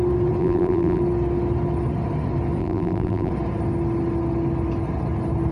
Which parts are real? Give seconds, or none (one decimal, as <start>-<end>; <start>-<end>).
0.0-0.4; 1.0-2.6; 3.3-5.5